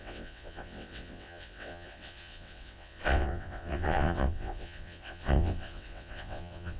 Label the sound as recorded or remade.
remade